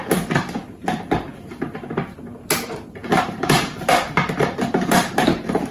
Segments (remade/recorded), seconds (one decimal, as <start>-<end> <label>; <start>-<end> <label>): 0.0-5.7 remade